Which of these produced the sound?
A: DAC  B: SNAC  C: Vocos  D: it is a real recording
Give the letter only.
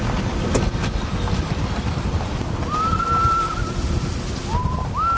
D